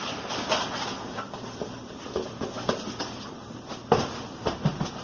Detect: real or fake real